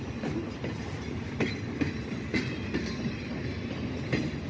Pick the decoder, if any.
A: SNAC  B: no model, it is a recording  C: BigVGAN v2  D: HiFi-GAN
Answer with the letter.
B